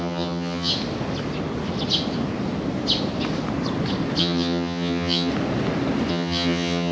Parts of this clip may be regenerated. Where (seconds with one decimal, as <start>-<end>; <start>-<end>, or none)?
0.0-0.7; 4.2-5.3; 6.1-6.9